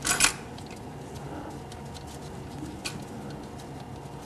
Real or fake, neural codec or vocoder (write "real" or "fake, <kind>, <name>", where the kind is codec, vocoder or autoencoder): real